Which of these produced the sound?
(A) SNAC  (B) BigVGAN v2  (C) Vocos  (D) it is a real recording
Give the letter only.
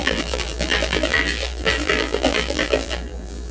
B